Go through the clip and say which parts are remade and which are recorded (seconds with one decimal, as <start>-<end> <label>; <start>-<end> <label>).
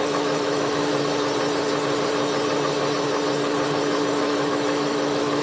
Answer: 0.0-0.9 remade; 0.9-4.1 recorded; 4.1-5.4 remade